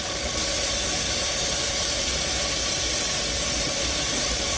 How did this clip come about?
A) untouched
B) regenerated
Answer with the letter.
A